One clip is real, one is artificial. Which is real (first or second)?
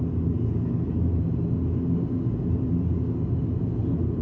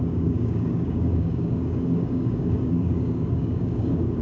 first